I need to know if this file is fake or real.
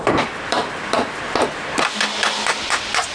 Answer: fake